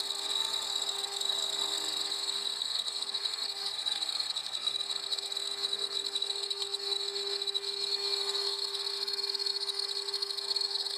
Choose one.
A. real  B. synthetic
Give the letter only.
B